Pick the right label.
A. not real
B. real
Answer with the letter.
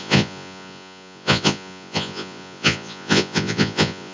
A